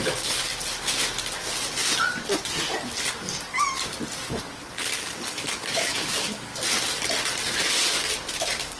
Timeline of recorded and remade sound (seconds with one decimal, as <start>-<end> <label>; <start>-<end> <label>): 0.0-0.5 remade; 0.5-5.0 recorded; 5.0-6.5 remade; 6.5-8.3 recorded; 8.3-8.8 remade